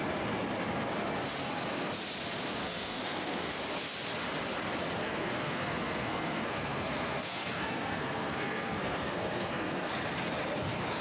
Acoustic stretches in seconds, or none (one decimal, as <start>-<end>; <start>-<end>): 0.0-2.6; 3.6-5.0; 9.9-11.0

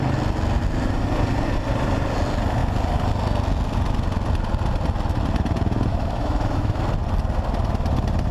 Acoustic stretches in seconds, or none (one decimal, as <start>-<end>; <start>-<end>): 0.0-5.9; 6.8-8.3

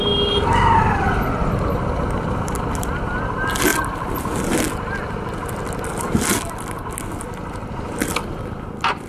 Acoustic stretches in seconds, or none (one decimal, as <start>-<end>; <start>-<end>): 0.0-9.1

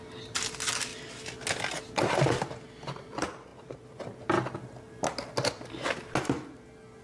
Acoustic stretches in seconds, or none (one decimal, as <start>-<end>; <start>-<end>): 0.0-7.0

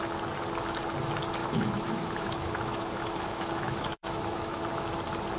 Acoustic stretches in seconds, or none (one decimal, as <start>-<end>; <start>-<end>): 0.0-1.4; 4.6-5.4